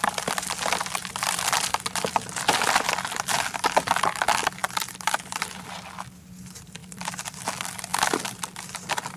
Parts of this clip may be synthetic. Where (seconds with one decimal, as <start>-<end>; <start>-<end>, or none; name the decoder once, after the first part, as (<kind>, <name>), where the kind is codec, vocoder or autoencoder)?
1.0-2.1 (vocoder, BigVGAN v2); 4.6-5.4; 6.8-7.4